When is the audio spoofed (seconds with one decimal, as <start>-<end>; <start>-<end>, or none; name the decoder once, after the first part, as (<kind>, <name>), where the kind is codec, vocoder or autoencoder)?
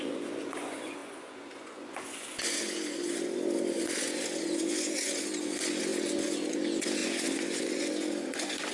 0.0-8.7 (vocoder, Vocos)